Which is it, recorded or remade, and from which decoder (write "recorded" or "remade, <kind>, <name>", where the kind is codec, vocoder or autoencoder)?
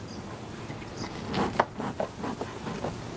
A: recorded